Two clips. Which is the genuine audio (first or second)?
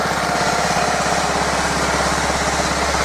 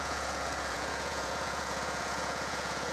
first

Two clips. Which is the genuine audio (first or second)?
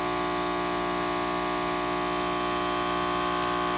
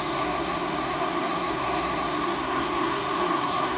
first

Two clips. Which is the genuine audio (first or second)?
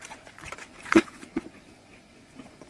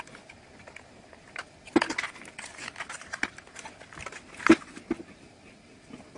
second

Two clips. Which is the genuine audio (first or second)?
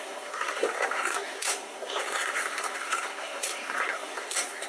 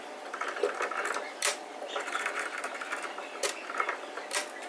second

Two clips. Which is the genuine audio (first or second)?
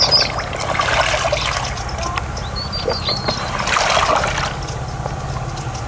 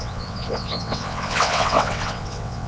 first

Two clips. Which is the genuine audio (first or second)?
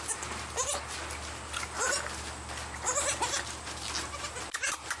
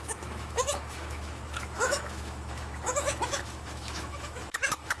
first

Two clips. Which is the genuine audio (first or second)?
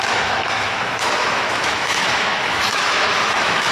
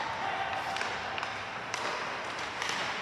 second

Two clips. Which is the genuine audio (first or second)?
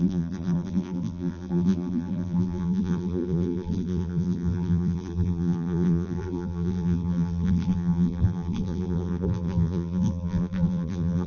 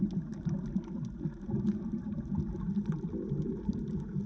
second